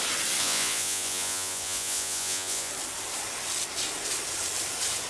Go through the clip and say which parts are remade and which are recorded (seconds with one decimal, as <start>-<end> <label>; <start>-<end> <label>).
0.0-0.4 recorded; 0.4-2.7 remade; 2.7-5.1 recorded